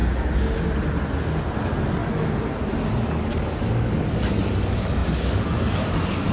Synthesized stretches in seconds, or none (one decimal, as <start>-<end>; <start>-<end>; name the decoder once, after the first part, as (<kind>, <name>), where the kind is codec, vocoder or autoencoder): 1.6-2.0 (codec, DAC); 3.0-6.3